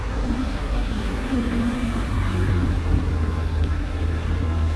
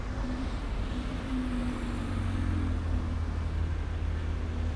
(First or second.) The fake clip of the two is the first